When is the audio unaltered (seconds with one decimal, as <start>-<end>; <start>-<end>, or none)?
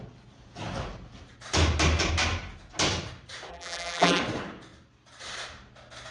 0.0-3.5; 4.2-6.1